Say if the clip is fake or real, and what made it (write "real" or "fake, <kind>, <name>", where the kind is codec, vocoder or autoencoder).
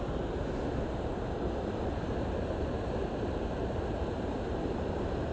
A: fake, vocoder, BigVGAN v2